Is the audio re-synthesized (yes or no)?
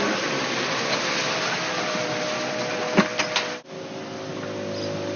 no